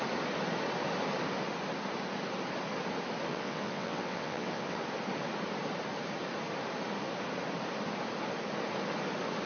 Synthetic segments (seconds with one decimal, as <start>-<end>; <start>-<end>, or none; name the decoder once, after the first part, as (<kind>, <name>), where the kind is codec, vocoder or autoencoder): 3.3-4.8 (vocoder, WaveNeXt)